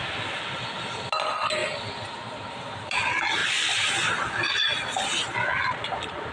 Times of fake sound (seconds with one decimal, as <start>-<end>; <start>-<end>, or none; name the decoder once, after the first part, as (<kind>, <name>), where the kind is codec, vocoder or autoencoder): none